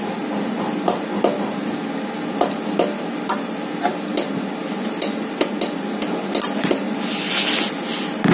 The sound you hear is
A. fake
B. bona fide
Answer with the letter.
B